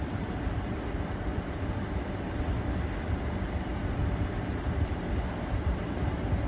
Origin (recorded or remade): remade